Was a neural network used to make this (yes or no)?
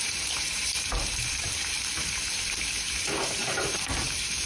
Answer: yes